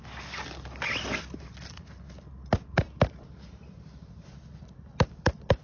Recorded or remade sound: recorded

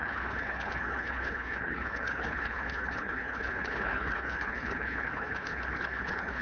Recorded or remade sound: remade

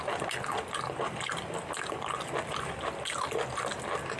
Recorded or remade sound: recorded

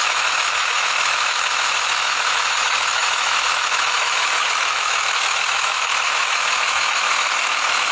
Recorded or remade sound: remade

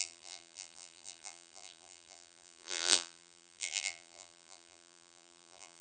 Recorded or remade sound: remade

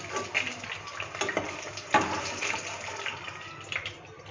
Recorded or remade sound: recorded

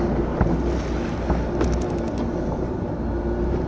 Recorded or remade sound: recorded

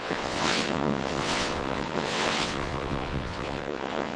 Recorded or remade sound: remade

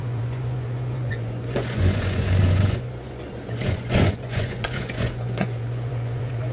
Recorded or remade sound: remade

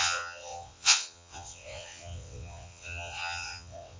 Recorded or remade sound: remade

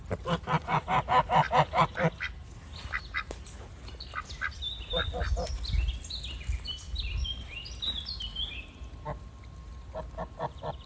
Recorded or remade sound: recorded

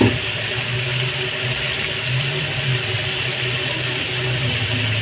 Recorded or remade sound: remade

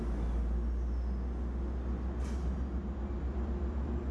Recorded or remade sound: recorded